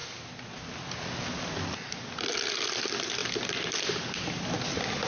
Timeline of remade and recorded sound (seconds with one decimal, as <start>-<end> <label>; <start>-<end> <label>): 0.0-5.1 recorded